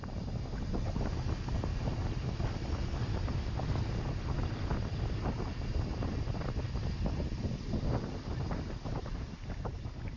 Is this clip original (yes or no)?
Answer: yes